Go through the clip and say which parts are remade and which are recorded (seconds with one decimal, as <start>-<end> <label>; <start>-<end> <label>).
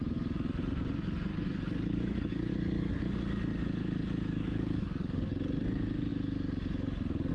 0.0-1.3 recorded; 1.3-2.5 remade; 2.5-4.3 recorded; 4.3-5.3 remade; 5.3-7.3 recorded